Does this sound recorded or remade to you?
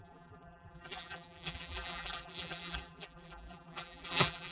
remade